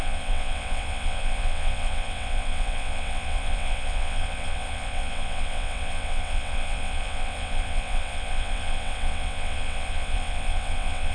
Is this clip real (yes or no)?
no